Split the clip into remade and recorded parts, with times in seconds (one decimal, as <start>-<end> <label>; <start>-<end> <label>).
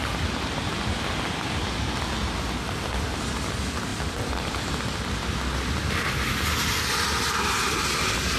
0.0-3.9 recorded; 3.9-4.8 remade; 4.8-8.4 recorded